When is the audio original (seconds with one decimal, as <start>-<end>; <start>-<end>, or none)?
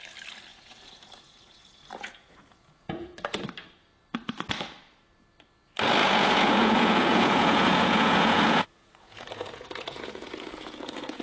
0.0-0.5; 3.4-6.0